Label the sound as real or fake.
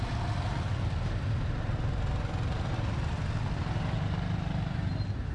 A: real